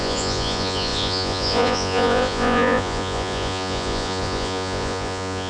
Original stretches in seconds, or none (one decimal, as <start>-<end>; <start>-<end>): none